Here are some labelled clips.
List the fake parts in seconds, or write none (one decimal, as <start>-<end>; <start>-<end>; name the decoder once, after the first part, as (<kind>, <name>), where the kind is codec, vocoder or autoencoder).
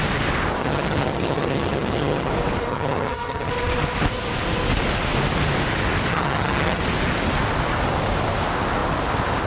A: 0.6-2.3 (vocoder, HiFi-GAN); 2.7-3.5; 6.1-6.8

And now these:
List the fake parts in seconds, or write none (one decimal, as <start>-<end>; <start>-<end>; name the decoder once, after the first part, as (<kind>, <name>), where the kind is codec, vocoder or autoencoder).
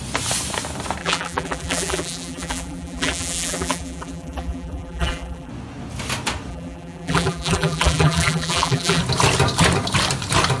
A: 1.0-5.5 (vocoder, BigVGAN v2); 6.5-9.0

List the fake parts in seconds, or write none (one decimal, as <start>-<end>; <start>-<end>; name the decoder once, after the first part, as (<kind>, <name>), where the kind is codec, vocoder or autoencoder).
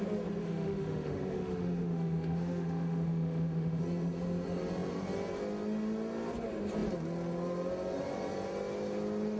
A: 0.4-3.8 (autoencoder, DAC-VAE)